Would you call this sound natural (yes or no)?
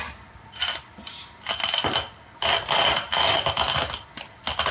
yes